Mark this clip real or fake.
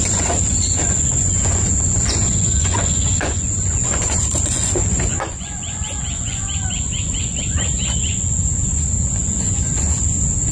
fake